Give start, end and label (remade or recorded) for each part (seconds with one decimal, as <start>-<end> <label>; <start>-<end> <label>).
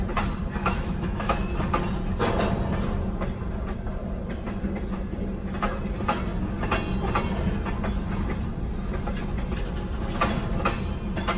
0.0-0.6 recorded; 0.6-1.5 remade; 1.5-11.4 recorded